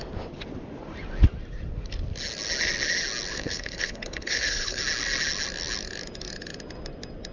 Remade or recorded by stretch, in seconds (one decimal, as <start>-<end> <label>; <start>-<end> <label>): 0.0-3.3 recorded; 3.3-4.8 remade; 4.8-7.3 recorded